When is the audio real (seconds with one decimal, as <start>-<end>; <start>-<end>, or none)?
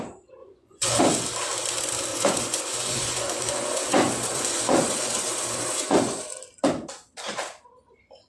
0.0-0.4; 1.0-2.1; 6.3-8.3